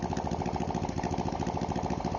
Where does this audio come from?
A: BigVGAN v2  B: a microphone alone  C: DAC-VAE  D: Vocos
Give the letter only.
B